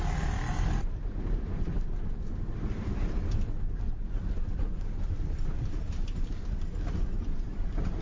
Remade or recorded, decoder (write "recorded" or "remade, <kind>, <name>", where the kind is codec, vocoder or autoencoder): remade, vocoder, BigVGAN v2